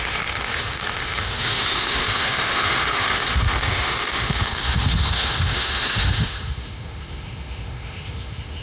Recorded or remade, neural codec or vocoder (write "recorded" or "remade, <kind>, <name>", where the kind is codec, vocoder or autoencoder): remade, autoencoder, DAC-VAE